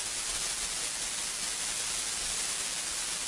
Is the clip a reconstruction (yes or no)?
no